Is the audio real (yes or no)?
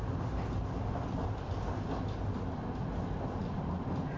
yes